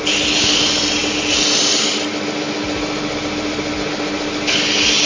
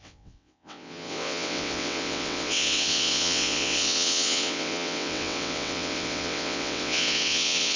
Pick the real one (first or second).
first